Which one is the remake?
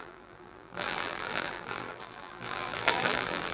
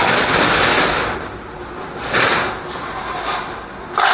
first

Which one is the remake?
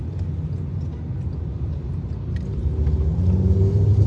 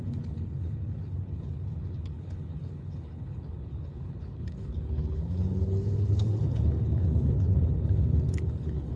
second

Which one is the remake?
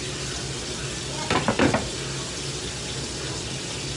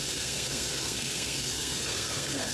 second